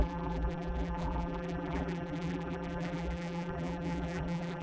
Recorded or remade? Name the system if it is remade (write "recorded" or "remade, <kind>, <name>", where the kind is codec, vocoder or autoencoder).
remade, vocoder, BigVGAN v2